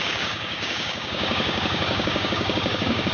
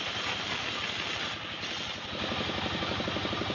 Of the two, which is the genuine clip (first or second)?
second